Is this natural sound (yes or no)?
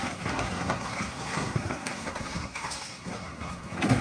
no